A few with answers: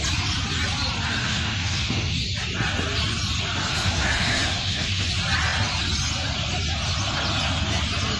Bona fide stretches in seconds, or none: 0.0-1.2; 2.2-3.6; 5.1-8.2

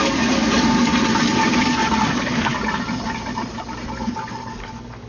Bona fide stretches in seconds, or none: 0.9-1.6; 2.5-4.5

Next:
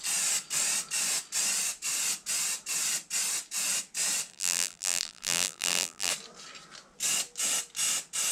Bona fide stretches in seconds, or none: 0.0-4.3; 6.1-8.3

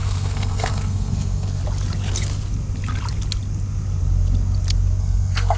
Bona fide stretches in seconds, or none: 1.6-5.0

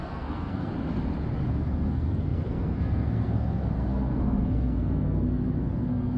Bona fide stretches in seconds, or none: 0.7-1.5

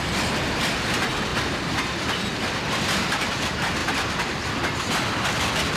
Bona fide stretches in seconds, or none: 0.0-3.8

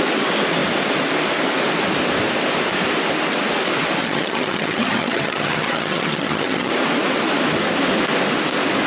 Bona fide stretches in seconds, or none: 0.0-4.0; 6.7-8.9

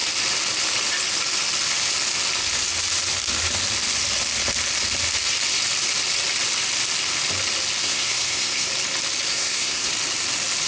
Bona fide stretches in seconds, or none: 0.0-7.8; 8.7-9.3; 9.9-10.7